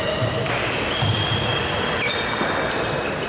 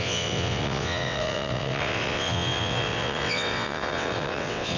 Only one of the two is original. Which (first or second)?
first